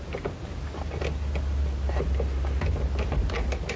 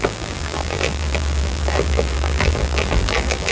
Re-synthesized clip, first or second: second